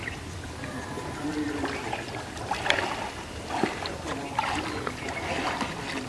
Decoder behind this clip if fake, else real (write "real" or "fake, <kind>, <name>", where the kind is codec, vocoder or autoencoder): real